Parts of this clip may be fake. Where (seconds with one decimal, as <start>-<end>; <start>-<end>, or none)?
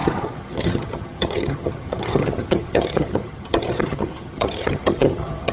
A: 0.0-5.5